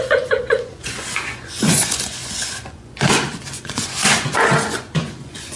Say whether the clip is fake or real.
fake